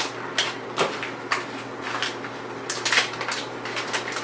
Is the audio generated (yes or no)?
no